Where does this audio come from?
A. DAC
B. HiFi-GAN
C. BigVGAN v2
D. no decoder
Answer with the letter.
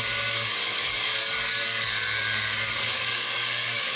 A